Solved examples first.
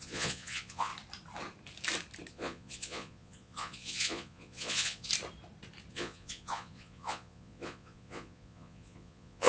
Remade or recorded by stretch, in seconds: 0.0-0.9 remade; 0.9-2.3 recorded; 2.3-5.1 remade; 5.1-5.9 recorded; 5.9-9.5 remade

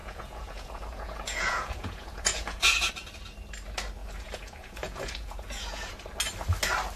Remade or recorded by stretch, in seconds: 0.0-2.9 remade; 2.9-4.0 recorded; 4.0-5.9 remade; 5.9-7.0 recorded

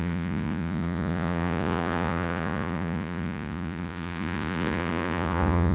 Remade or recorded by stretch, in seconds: 0.0-5.7 remade

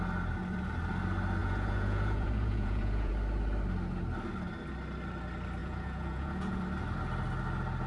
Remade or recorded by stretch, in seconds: 0.0-1.4 recorded; 1.4-3.1 remade; 3.1-5.6 recorded; 5.6-6.6 remade; 6.6-7.9 recorded

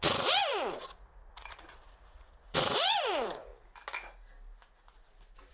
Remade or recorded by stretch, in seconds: 0.0-3.5 remade; 3.5-5.5 recorded

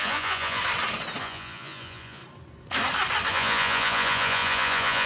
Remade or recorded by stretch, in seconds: 0.0-0.6 remade; 0.6-1.2 recorded; 1.2-2.2 remade; 2.2-3.3 recorded; 3.3-5.1 remade